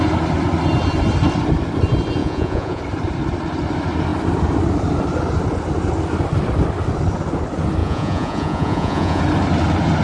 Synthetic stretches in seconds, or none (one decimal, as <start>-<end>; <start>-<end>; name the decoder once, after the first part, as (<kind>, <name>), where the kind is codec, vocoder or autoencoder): 2.2-2.8 (vocoder, Vocos); 7.8-9.2